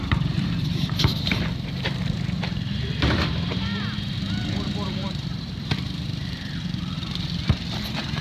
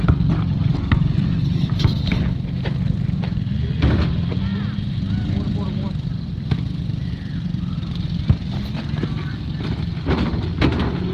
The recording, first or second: second